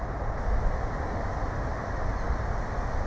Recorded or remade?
recorded